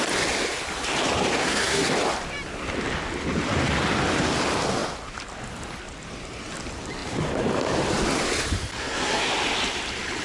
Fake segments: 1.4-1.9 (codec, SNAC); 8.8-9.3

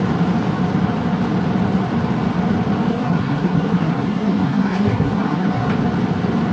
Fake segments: 2.9-5.7 (codec, SNAC)

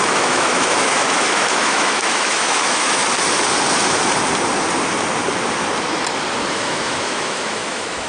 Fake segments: 0.0-3.0 (autoencoder, DAC-VAE); 6.5-8.1

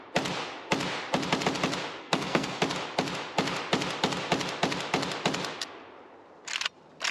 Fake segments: 2.0-2.6 (codec, SNAC)

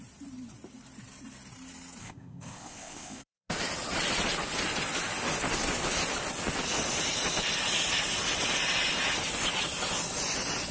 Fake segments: 2.0-3.5 (codec, ZipCodec)

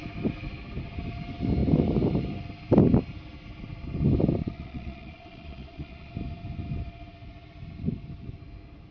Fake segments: 4.4-6.1 (vocoder, Vocos)

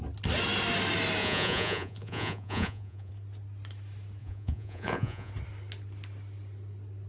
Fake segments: 1.2-3.1 (vocoder, Vocos); 4.2-5.3

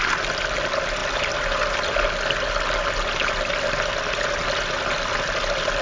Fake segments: none